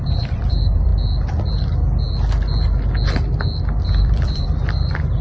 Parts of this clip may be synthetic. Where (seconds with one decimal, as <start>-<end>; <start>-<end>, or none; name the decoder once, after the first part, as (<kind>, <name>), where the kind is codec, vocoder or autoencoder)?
0.0-0.9 (vocoder, BigVGAN v2); 3.8-5.2